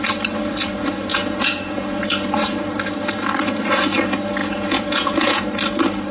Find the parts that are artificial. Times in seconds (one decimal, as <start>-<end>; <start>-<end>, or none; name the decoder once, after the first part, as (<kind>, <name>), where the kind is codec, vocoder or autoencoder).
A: 1.1-2.0 (vocoder, Vocos); 4.4-5.4